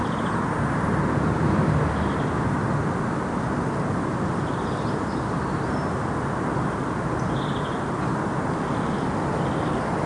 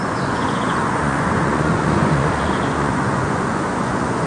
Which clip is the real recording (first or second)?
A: first